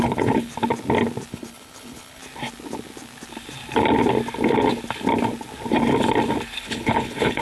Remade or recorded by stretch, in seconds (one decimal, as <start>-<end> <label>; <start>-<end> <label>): 0.0-0.5 remade; 0.5-1.3 recorded; 1.3-2.2 remade; 2.2-6.6 recorded; 6.6-7.4 remade